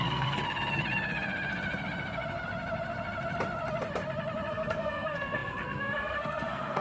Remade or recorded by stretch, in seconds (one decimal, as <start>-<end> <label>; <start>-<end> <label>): 0.0-0.4 remade; 0.4-4.5 recorded; 4.5-6.8 remade